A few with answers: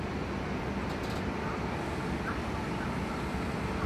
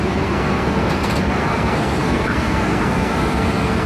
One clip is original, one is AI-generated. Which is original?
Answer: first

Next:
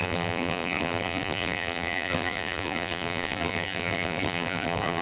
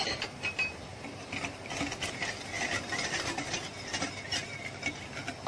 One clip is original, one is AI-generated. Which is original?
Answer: second